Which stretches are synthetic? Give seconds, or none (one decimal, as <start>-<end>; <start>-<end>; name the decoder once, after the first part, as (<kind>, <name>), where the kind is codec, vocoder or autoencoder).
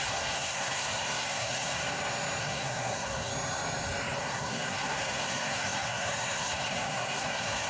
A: 0.0-1.8 (codec, SNAC); 2.4-3.3; 4.2-7.7